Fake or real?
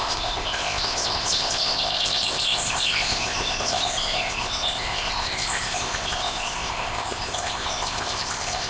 fake